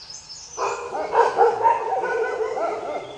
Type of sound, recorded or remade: recorded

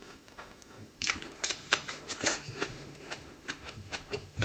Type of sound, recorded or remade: remade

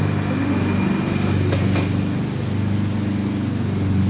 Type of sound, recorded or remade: recorded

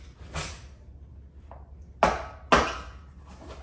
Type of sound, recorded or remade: recorded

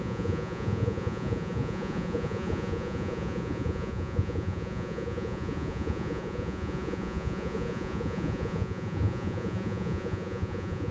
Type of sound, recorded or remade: remade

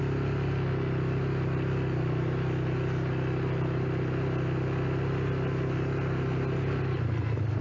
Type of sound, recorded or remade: recorded